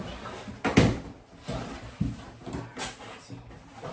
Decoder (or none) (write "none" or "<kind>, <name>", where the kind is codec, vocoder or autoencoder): none